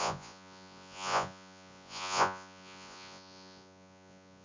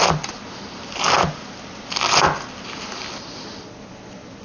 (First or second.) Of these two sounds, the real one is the second